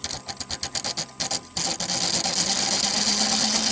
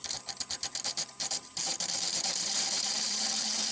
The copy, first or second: second